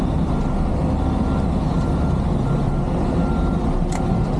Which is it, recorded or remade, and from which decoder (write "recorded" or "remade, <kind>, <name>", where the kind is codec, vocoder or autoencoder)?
recorded